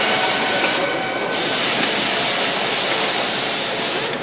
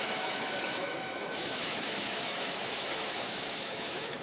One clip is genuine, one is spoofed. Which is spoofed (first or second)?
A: second